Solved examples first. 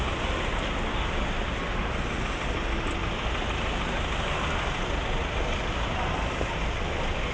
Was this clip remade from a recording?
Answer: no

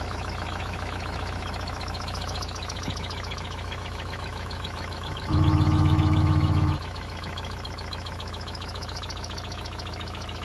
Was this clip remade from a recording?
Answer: yes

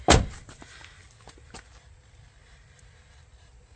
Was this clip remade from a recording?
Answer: no